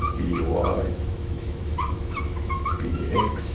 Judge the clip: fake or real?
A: fake